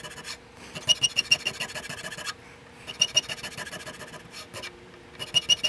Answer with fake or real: real